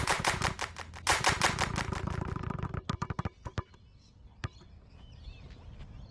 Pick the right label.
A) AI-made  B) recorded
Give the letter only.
B